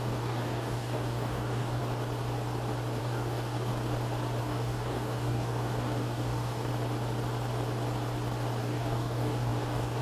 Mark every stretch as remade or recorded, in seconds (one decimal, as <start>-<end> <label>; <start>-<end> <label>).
0.0-1.8 remade; 1.8-3.0 recorded; 3.0-3.7 remade; 3.7-4.4 recorded; 4.4-6.7 remade; 6.7-8.6 recorded; 8.6-10.0 remade